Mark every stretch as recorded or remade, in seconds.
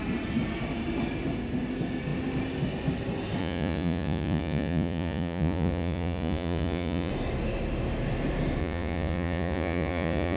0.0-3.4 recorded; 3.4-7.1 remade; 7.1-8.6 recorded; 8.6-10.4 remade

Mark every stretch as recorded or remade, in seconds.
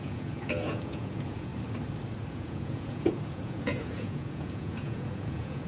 0.0-1.5 remade; 1.5-2.3 recorded; 2.3-5.7 remade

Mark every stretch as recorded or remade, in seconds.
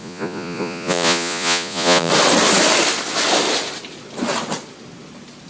0.0-2.1 remade; 2.1-5.5 recorded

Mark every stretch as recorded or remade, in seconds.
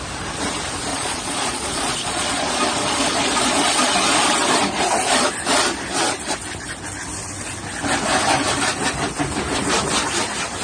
0.0-0.9 recorded; 0.9-2.5 remade; 2.5-10.6 recorded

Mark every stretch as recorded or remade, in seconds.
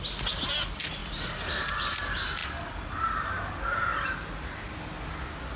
0.0-5.6 recorded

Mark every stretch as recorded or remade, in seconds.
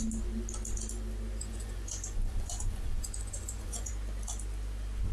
0.0-1.4 recorded; 1.4-3.9 remade; 3.9-5.1 recorded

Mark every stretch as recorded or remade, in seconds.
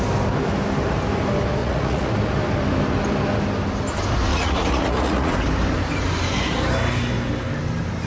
0.0-1.6 recorded; 1.6-2.1 remade; 2.1-4.3 recorded; 4.3-5.3 remade; 5.3-8.1 recorded